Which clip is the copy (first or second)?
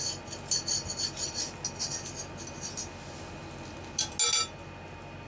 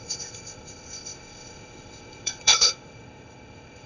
second